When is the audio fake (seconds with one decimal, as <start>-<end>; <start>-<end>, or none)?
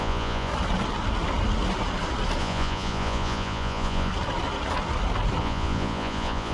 0.0-0.5; 2.4-4.1; 5.4-6.5